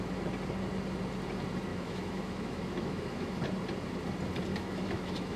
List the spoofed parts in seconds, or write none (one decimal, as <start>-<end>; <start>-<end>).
1.7-3.4; 4.5-5.4